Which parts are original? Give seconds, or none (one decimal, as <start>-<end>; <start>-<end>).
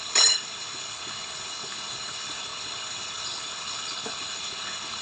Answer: none